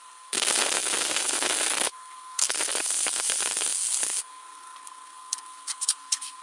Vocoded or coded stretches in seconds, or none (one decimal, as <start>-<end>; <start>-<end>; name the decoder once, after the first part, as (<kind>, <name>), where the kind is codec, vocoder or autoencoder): 0.0-6.4 (codec, SNAC)